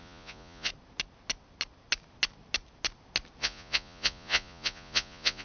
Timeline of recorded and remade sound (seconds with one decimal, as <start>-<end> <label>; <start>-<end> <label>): 0.0-0.7 remade; 0.7-3.4 recorded; 3.4-5.4 remade